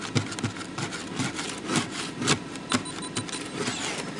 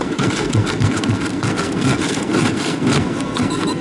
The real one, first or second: first